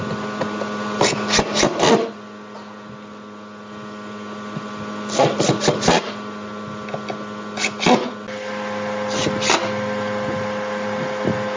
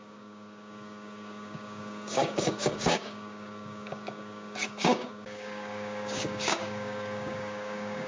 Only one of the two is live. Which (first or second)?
first